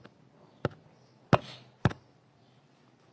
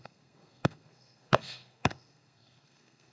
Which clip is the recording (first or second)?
first